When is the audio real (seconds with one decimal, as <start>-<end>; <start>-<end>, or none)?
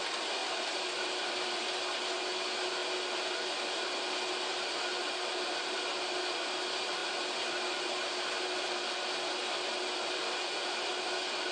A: 0.0-11.5